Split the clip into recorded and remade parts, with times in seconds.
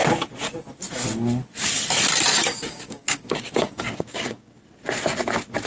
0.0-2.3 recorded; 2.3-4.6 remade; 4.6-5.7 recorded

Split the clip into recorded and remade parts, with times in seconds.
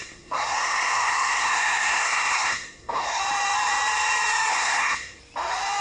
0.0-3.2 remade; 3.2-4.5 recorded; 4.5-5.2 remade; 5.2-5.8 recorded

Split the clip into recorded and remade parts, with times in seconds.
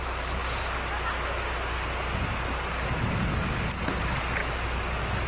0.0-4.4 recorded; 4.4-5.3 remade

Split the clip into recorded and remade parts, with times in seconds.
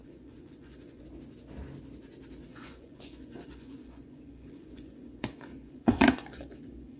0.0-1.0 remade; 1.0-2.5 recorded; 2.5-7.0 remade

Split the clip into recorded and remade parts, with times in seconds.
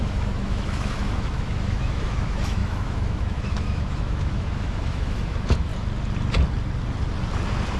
0.0-5.7 remade; 5.7-7.8 recorded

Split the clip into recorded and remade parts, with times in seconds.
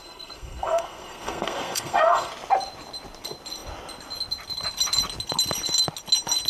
0.0-2.3 remade; 2.3-6.5 recorded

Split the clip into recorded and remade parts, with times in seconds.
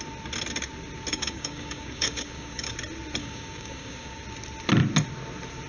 0.0-1.1 recorded; 1.1-2.7 remade; 2.7-3.2 recorded; 3.2-4.2 remade; 4.2-5.7 recorded